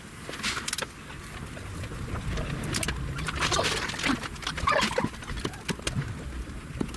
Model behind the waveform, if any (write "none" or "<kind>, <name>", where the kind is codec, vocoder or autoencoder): none